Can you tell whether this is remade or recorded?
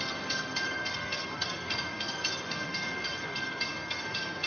remade